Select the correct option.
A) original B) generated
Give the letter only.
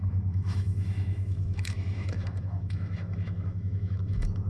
B